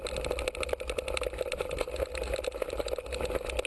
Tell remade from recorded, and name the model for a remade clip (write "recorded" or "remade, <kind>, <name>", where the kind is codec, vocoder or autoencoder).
recorded